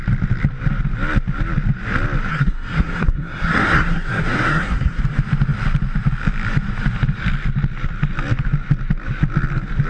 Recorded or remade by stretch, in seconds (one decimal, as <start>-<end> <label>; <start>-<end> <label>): 0.0-2.3 recorded; 2.3-5.0 remade; 5.0-9.9 recorded